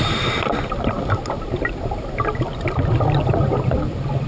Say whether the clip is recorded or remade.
remade